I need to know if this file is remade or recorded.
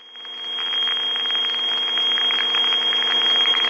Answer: recorded